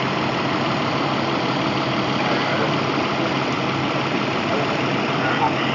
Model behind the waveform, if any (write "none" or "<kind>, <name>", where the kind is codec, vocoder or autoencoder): none